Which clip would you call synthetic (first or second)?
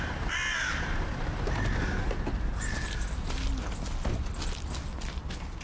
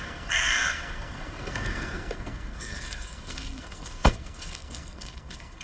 second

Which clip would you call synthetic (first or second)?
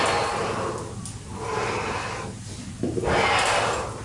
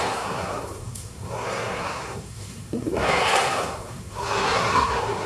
second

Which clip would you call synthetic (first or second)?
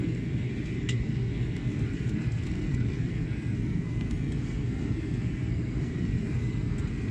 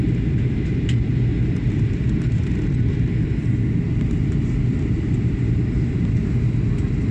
first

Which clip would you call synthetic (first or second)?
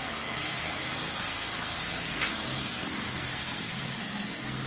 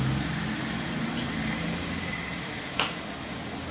first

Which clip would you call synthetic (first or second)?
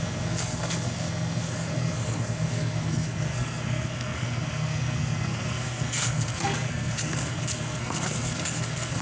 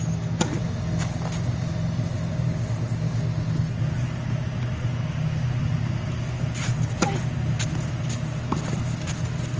first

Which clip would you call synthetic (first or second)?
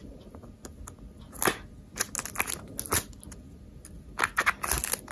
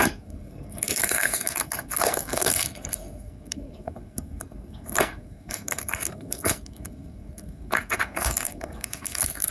second